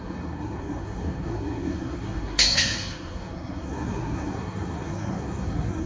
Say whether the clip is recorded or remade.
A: remade